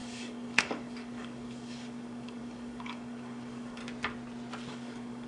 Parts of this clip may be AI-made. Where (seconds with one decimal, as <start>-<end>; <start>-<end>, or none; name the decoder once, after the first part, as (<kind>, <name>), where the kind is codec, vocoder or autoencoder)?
0.0-3.8 (codec, DAC); 4.7-5.3